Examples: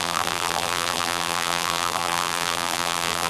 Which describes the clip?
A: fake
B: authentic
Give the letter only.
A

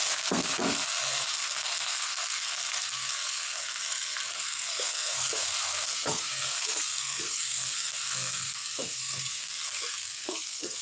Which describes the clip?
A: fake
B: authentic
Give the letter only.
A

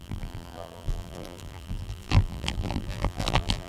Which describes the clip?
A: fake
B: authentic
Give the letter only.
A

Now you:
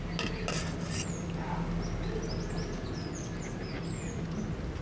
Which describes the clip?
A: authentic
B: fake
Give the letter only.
A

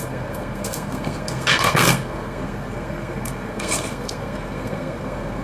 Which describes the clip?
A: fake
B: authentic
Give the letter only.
A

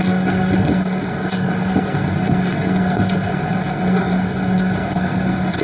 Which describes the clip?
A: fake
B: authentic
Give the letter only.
A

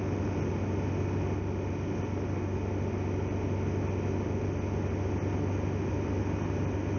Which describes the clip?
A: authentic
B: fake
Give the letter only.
A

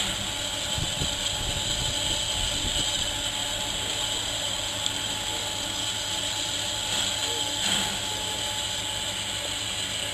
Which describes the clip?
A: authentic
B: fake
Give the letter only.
A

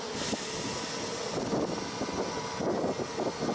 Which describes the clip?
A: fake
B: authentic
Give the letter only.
B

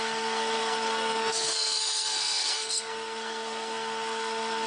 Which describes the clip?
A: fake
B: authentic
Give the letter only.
A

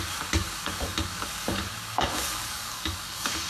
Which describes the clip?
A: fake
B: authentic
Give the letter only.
A